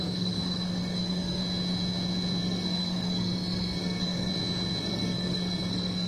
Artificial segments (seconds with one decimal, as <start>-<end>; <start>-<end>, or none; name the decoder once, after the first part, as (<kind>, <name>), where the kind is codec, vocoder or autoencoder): 0.0-1.4 (codec, SNAC); 2.4-4.3; 4.8-6.1